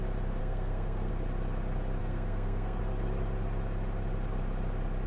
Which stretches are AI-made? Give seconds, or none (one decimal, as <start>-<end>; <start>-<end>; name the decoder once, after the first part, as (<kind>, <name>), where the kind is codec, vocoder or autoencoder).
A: 0.4-1.1 (codec, SNAC); 2.0-2.8